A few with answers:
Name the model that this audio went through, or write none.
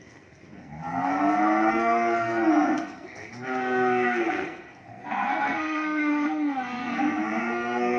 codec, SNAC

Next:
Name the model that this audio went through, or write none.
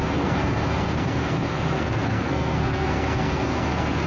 codec, SNAC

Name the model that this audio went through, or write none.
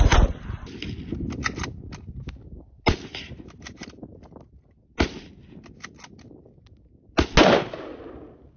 none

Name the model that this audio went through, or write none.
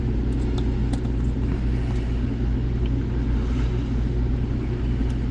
none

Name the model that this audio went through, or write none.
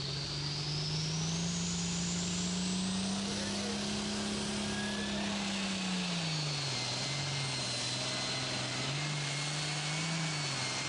none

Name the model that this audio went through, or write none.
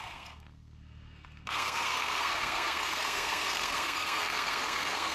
codec, SNAC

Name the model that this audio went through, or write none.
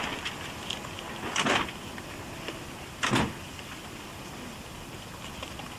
none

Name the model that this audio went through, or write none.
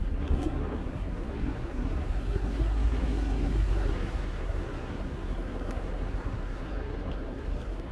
codec, SNAC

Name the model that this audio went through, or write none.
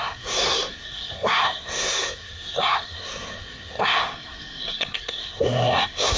codec, SNAC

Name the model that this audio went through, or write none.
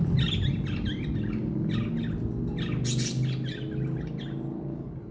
none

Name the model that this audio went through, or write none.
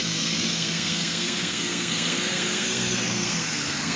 codec, SNAC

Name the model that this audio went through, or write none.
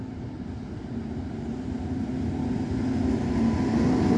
none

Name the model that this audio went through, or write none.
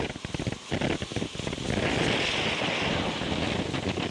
none